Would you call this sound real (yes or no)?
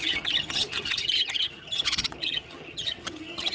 no